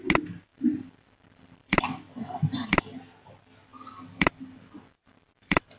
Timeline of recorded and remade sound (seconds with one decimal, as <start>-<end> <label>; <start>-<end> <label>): 0.0-0.5 recorded; 0.5-2.8 remade; 2.8-3.7 recorded; 3.7-5.8 remade